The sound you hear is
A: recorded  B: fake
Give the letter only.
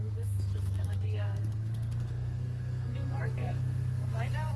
B